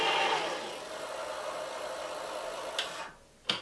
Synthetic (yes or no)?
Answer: no